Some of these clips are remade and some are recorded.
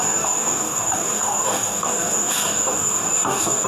remade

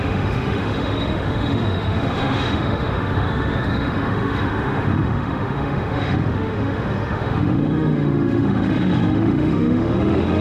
remade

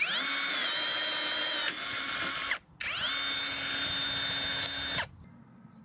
recorded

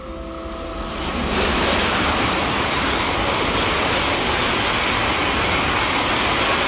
recorded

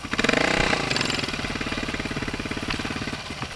recorded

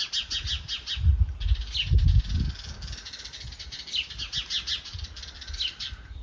recorded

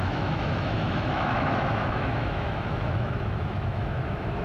remade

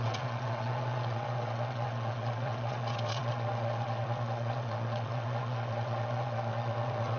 remade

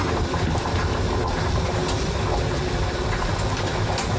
recorded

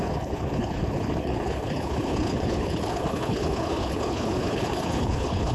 remade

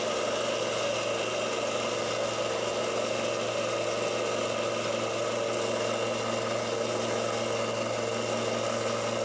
recorded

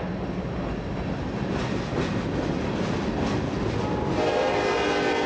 recorded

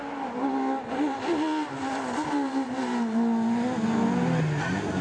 recorded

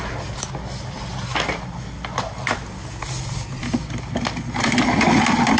recorded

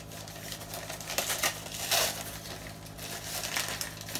recorded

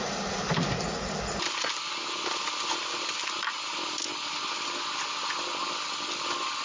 recorded